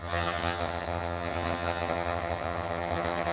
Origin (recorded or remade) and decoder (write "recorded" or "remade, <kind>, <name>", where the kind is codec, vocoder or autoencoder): remade, vocoder, HiFi-GAN